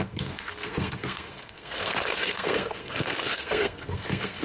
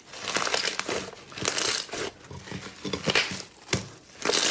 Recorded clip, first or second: second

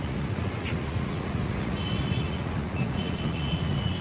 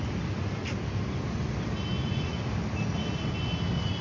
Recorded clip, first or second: second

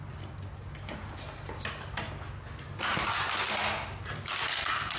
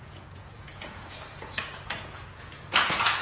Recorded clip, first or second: first